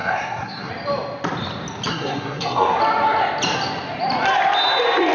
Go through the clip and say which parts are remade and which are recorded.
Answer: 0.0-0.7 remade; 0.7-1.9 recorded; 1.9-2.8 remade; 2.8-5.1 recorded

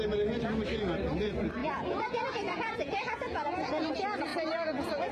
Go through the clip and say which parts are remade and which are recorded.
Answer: 0.0-1.6 recorded; 1.6-3.9 remade; 3.9-4.3 recorded; 4.3-5.1 remade

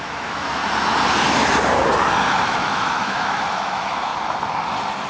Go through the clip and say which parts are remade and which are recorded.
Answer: 0.0-0.6 remade; 0.6-2.3 recorded; 2.3-4.1 remade; 4.1-5.1 recorded

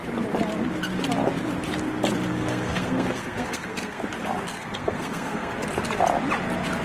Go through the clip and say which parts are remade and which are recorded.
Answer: 0.0-2.3 recorded; 2.3-4.0 remade; 4.0-4.5 recorded; 4.5-5.5 remade; 5.5-6.8 recorded

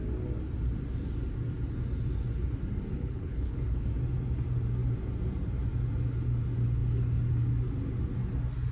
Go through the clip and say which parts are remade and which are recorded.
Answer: 0.0-2.9 recorded; 2.9-3.9 remade; 3.9-8.7 recorded